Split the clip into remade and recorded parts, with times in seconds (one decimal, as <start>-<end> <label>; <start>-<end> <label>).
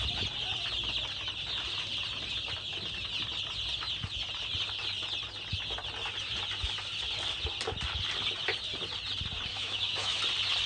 0.0-9.5 recorded; 9.5-10.2 remade; 10.2-10.7 recorded